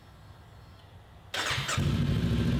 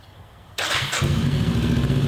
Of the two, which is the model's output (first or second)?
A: second